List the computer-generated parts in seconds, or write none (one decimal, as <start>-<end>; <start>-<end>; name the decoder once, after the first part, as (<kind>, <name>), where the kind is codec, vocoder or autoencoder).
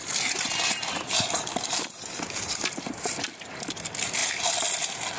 0.0-3.1 (vocoder, BigVGAN v2)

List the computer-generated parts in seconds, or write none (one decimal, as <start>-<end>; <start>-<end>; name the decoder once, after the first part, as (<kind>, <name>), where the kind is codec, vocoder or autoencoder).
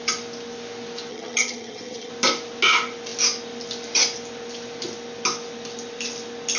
1.1-2.1 (vocoder, HiFi-GAN)